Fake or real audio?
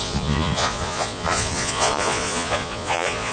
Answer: fake